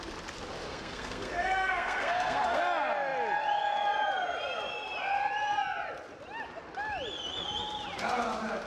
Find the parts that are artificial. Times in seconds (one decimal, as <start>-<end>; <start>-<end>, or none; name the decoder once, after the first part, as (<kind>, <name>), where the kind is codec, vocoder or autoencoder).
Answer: 0.7-2.6 (codec, SNAC)